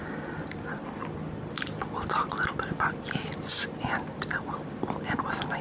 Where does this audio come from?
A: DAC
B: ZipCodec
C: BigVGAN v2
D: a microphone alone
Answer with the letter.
D